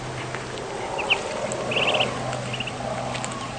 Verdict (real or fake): real